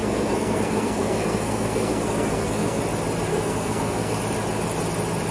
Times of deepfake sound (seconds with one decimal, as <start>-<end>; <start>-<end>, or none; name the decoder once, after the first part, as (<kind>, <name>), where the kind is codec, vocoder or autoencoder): 0.0-2.8 (codec, SNAC); 3.3-4.2